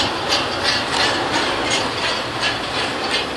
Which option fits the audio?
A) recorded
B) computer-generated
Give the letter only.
A